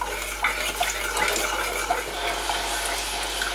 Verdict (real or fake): real